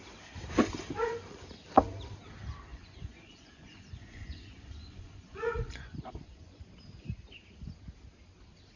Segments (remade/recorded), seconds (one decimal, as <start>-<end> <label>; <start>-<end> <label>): 0.0-2.7 recorded; 2.7-6.6 remade; 6.6-8.8 recorded